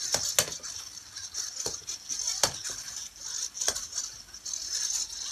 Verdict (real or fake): real